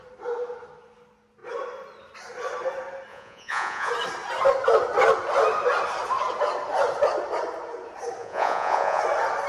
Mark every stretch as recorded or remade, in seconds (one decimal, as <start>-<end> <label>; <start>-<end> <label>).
0.0-3.1 recorded; 3.1-3.9 remade; 3.9-8.2 recorded; 8.2-9.0 remade; 9.0-9.5 recorded